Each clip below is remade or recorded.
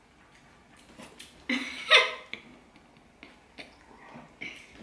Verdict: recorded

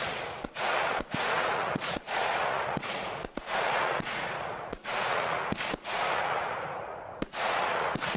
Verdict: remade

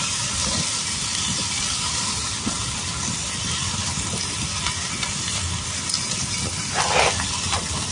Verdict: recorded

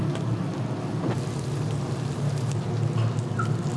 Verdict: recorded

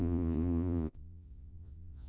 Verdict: remade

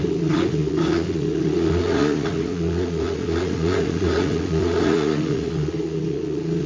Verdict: remade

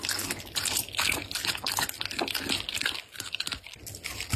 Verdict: recorded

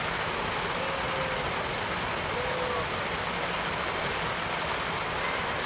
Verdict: recorded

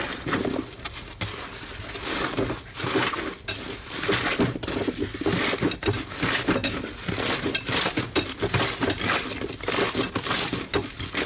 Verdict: recorded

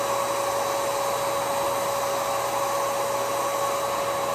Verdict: recorded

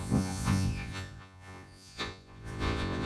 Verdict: remade